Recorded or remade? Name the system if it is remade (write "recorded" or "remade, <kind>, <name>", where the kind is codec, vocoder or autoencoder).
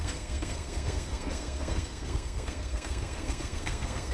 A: remade, codec, SNAC